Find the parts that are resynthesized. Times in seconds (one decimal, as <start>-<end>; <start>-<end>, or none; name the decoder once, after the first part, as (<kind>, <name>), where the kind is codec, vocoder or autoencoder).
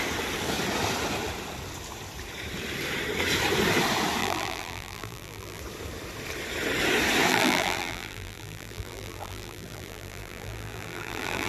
4.2-5.6 (vocoder, BigVGAN v2); 7.3-11.5